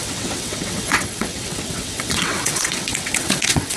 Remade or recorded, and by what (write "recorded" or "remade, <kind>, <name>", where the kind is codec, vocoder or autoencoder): remade, vocoder, WaveNeXt